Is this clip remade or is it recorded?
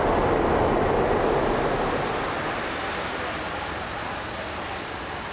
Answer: recorded